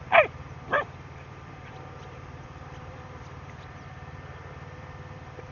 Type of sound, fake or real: fake